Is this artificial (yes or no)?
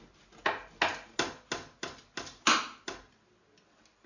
no